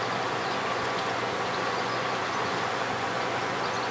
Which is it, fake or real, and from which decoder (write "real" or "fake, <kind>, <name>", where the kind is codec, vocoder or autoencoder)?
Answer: fake, vocoder, Vocos